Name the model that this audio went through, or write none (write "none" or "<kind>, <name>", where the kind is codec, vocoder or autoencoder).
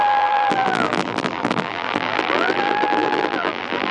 vocoder, BigVGAN v2